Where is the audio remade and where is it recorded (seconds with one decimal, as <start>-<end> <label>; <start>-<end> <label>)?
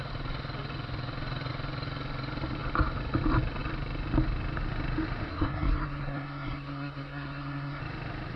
0.0-5.3 recorded; 5.3-7.8 remade; 7.8-8.4 recorded